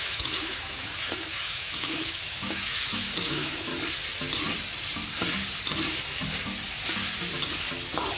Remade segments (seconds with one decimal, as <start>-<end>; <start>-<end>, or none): 0.0-3.7